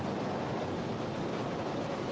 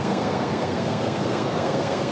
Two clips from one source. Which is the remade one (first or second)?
second